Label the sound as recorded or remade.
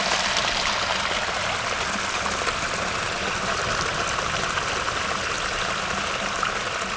recorded